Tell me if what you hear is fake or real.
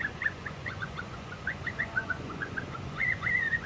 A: fake